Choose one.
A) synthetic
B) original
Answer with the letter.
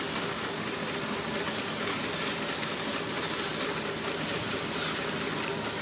B